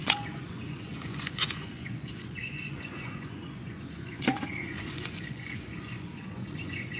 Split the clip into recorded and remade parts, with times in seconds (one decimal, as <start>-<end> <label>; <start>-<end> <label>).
0.0-7.0 remade